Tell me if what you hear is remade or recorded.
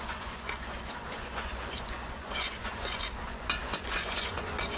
remade